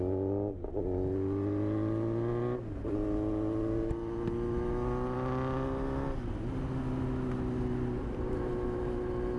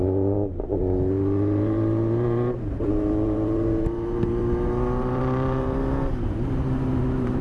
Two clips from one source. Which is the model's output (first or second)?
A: second